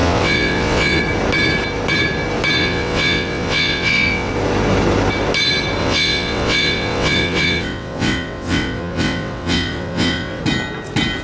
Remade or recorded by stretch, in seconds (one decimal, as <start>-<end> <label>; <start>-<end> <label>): 0.0-1.0 remade; 1.0-2.6 recorded; 2.6-4.3 remade; 4.3-5.8 recorded; 5.8-10.4 remade; 10.4-11.2 recorded